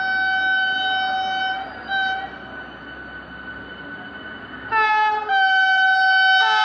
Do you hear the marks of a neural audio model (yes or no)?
no